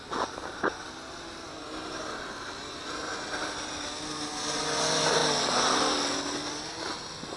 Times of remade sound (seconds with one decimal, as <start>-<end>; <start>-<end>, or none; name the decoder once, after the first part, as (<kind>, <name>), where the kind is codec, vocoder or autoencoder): none